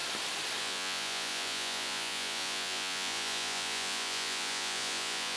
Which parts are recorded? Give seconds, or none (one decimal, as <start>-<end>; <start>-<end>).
0.0-0.6